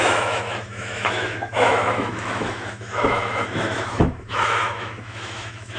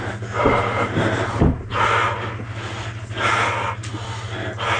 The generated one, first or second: first